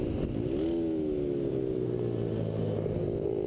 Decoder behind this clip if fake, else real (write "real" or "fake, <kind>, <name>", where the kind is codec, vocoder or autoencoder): real